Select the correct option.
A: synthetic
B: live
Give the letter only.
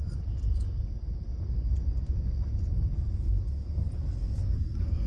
B